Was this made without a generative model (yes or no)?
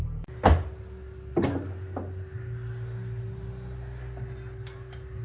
yes